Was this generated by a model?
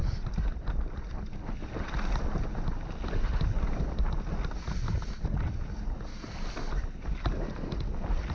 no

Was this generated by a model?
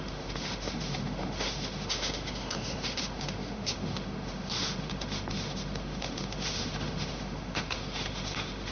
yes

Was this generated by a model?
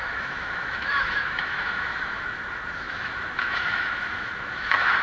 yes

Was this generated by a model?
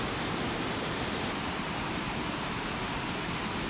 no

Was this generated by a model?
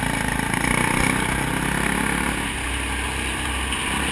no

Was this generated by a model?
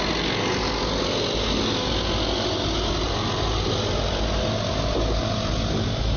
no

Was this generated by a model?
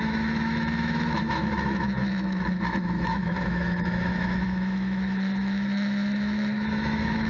yes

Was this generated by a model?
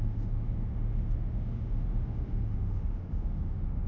yes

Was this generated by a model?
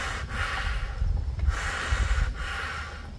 no